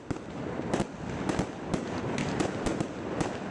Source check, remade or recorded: recorded